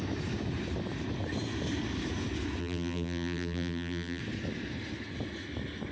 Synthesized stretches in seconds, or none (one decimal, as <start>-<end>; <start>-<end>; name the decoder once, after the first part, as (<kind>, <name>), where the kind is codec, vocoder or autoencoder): 2.6-4.2 (vocoder, BigVGAN v2)